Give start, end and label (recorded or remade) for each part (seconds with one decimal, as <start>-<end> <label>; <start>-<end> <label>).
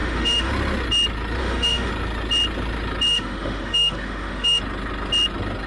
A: 0.0-0.5 remade; 0.5-1.4 recorded; 1.4-1.9 remade; 1.9-3.1 recorded; 3.1-4.6 remade; 4.6-5.7 recorded